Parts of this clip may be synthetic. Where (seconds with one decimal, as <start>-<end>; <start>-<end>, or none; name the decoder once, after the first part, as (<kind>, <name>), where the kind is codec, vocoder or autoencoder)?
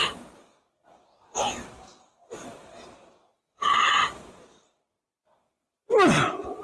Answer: none